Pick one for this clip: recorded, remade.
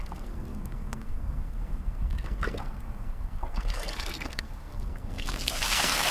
remade